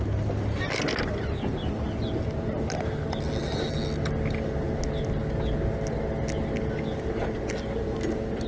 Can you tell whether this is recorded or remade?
recorded